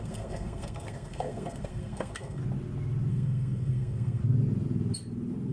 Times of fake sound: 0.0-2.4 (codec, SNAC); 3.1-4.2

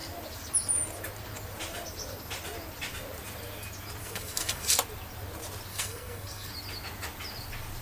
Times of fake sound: 4.0-4.7 (codec, SNAC); 5.7-6.5